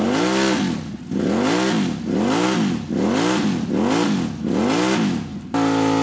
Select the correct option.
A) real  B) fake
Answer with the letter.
A